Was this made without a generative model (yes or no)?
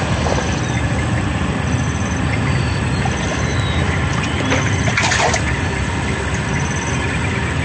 yes